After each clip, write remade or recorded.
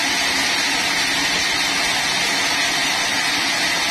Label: recorded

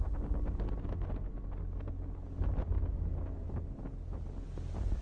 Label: recorded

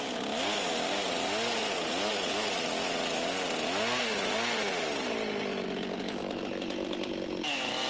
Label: recorded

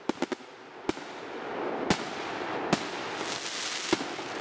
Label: recorded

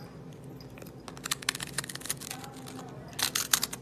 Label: recorded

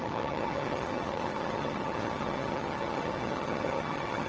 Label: remade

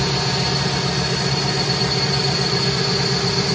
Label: recorded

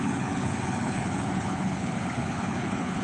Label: remade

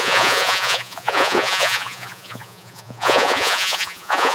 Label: remade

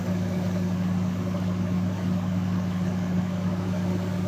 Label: remade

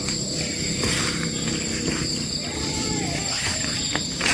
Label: recorded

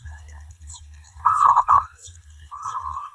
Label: remade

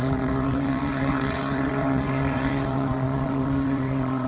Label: remade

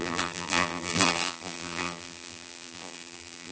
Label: remade